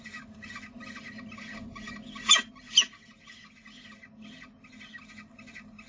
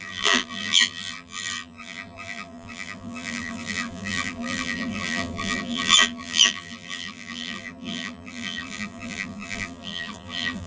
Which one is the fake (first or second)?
second